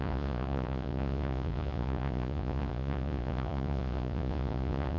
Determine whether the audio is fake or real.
fake